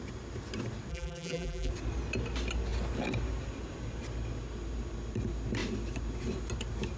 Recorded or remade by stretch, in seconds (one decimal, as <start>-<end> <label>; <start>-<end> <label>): 0.0-0.9 recorded; 0.9-1.7 remade; 1.7-7.0 recorded